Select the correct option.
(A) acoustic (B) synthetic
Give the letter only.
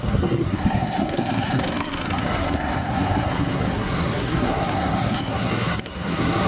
B